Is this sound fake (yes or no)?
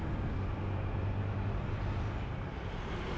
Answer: no